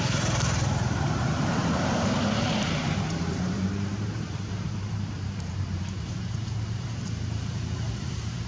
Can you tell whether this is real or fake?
fake